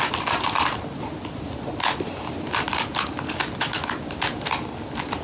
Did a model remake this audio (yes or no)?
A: no